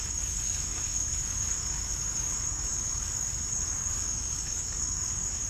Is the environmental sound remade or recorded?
remade